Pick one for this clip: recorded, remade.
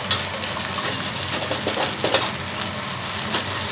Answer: recorded